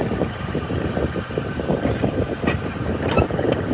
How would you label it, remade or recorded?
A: remade